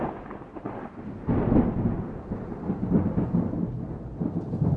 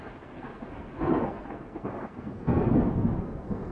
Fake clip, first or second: second